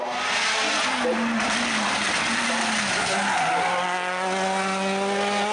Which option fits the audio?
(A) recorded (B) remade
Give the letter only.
A